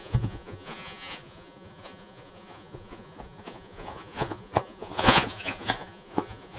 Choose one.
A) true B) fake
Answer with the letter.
B